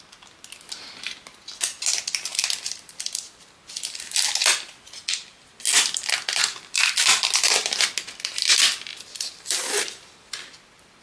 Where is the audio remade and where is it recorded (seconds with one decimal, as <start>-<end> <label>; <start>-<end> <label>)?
0.0-2.3 recorded; 2.3-4.2 remade; 4.2-5.0 recorded; 5.0-5.6 remade; 5.6-6.4 recorded; 6.4-7.0 remade; 7.0-8.9 recorded; 8.9-10.6 remade; 10.6-11.0 recorded

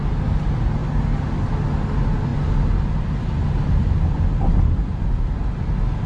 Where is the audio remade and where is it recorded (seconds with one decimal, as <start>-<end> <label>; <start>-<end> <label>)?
0.0-6.1 recorded

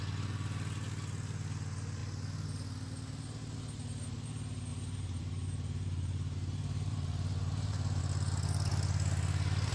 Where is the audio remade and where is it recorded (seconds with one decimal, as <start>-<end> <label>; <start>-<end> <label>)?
0.0-4.7 recorded; 4.7-8.0 remade; 8.0-9.7 recorded